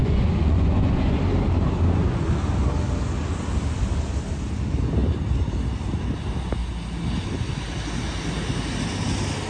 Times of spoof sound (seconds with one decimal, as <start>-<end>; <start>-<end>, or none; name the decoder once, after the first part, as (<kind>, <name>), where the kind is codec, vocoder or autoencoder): 0.0-1.2 (vocoder, Vocos)